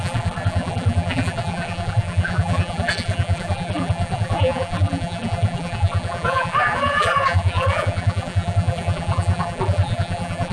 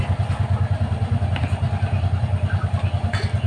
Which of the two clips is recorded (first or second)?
second